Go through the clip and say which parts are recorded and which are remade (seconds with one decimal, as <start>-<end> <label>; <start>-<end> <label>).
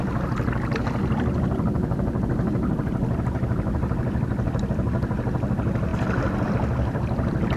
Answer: 0.0-7.6 recorded